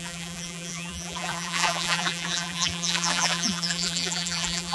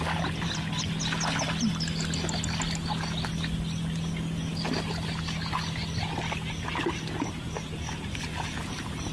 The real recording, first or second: second